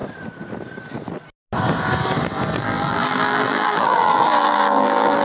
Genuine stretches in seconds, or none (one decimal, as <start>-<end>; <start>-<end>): 0.0-2.6